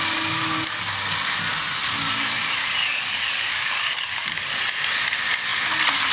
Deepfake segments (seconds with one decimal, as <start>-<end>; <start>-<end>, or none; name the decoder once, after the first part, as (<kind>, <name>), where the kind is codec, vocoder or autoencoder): 2.8-4.6 (codec, DAC)